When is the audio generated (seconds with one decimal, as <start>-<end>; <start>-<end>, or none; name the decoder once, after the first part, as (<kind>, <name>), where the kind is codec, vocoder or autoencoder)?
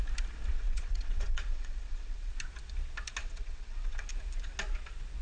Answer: 0.5-2.3 (vocoder, WaveNeXt); 3.2-4.1